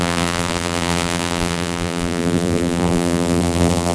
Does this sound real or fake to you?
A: fake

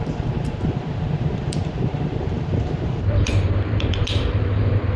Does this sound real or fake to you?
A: fake